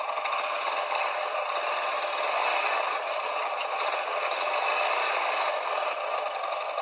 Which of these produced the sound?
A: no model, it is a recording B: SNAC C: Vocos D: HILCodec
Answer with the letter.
A